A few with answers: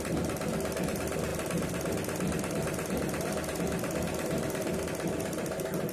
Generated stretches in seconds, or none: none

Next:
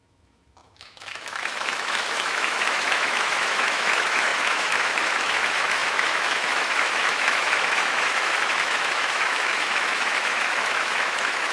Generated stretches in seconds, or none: 0.0-11.5 (autoencoder, DAC-VAE)

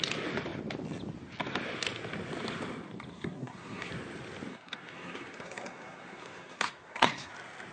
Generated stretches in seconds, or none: 3.1-3.9 (codec, SNAC); 4.5-7.3

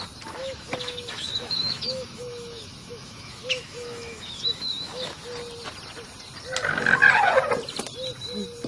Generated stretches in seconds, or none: 0.4-5.2 (autoencoder, DAC-VAE)

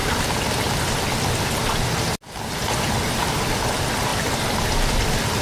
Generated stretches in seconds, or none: none

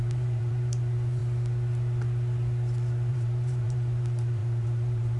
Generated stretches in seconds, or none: 0.0-1.2 (vocoder, BigVGAN v2); 3.1-5.2

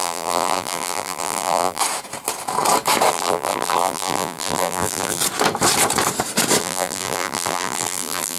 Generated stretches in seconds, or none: 0.0-1.8 (vocoder, BigVGAN v2); 3.1-5.2; 6.6-8.4